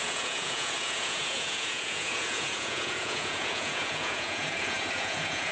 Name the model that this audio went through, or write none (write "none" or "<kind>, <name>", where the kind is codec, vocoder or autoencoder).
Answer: vocoder, Vocos